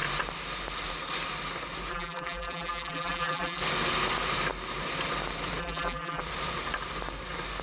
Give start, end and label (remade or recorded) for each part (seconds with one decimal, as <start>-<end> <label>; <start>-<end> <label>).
0.0-1.9 recorded; 1.9-3.6 remade; 3.6-5.6 recorded; 5.6-6.2 remade; 6.2-7.6 recorded